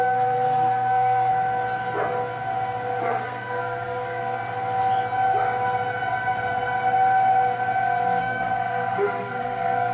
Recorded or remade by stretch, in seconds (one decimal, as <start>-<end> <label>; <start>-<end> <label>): 0.0-1.3 remade; 1.3-3.0 recorded; 3.0-4.4 remade; 4.4-8.2 recorded; 8.2-9.9 remade